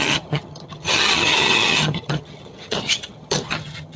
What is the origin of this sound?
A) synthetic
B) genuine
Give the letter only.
A